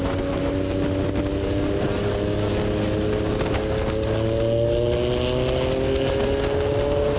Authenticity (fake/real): real